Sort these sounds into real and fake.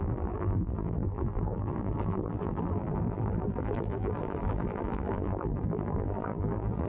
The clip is fake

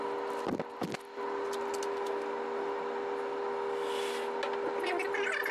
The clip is real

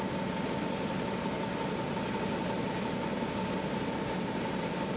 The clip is real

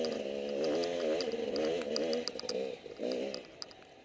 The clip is real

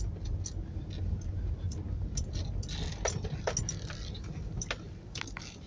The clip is real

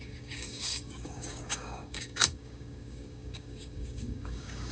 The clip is fake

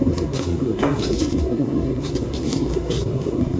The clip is fake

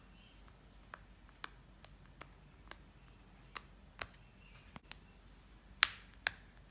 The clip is real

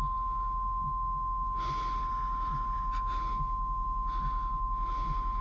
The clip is real